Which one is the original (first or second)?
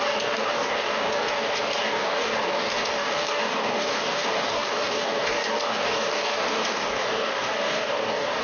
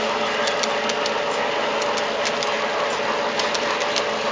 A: second